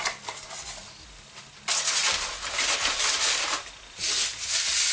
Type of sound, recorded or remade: recorded